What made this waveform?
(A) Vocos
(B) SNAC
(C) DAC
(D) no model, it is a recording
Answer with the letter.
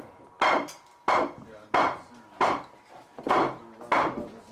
D